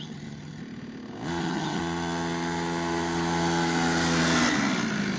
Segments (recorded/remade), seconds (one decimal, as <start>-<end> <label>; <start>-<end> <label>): 0.0-0.6 remade; 0.6-1.4 recorded; 1.4-1.8 remade; 1.8-5.2 recorded

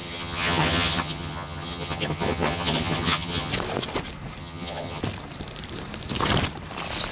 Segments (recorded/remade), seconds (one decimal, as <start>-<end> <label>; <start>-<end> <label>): 0.0-3.5 remade; 3.5-4.4 recorded; 4.4-5.0 remade; 5.0-7.1 recorded

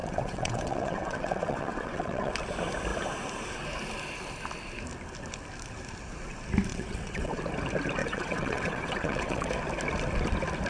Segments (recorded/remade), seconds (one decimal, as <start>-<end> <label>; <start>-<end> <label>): 0.0-2.3 remade; 2.3-6.7 recorded; 6.7-7.4 remade; 7.4-8.0 recorded; 8.0-9.5 remade; 9.5-10.7 recorded

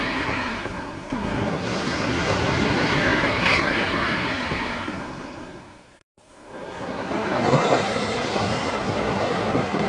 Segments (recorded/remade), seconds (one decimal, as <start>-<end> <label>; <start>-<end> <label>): 0.0-9.9 remade

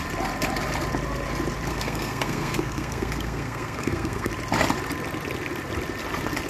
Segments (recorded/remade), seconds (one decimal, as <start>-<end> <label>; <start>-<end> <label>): 0.0-1.7 recorded; 1.7-4.3 remade; 4.3-6.5 recorded

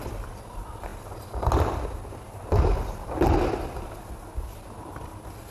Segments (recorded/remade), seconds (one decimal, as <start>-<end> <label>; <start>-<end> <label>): 0.0-5.5 recorded